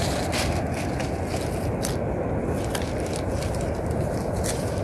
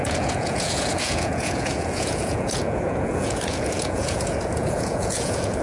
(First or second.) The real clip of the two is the first